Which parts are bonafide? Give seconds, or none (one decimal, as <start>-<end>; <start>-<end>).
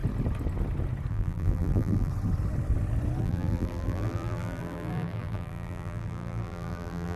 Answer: 0.0-1.1; 2.1-3.2